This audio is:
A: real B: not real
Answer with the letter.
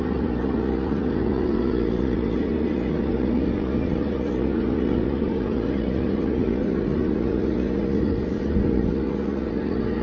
B